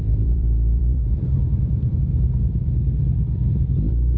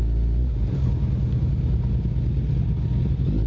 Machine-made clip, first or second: first